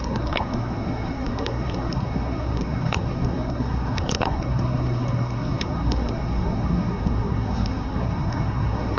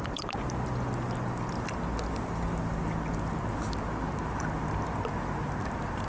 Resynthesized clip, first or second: first